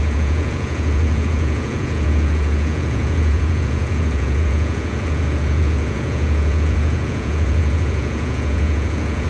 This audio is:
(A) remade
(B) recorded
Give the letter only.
A